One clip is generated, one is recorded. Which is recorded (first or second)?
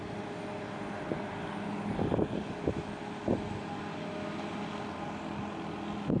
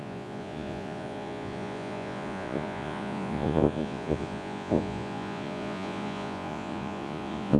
first